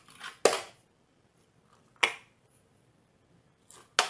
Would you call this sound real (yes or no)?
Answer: yes